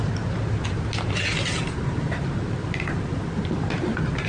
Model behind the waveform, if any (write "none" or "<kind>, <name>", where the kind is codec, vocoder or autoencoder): none